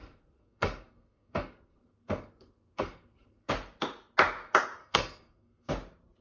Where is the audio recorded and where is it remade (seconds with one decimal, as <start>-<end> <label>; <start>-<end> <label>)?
0.0-3.5 remade; 3.5-4.8 recorded; 4.8-5.7 remade; 5.7-6.2 recorded